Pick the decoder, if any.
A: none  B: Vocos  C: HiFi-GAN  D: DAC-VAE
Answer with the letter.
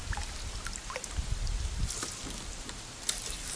A